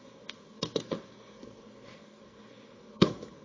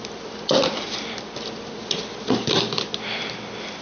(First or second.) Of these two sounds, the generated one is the first